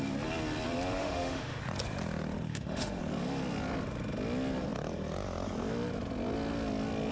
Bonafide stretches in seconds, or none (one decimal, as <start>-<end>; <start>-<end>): 0.0-1.0; 1.6-2.5; 3.0-7.1